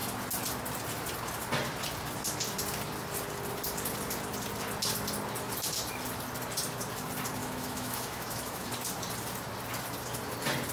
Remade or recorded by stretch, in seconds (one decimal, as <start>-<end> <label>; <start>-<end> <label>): 0.0-7.4 recorded; 7.4-8.7 remade; 8.7-10.7 recorded